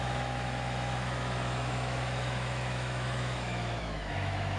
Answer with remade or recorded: remade